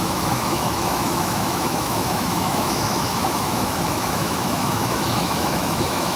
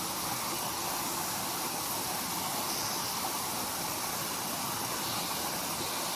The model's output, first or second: first